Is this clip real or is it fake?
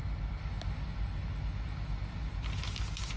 real